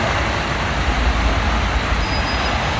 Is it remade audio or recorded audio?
recorded